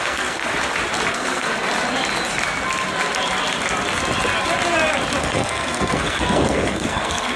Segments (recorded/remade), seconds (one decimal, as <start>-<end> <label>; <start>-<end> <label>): 0.0-0.4 remade; 0.4-1.1 recorded; 1.1-1.5 remade; 1.5-5.2 recorded; 5.2-7.4 remade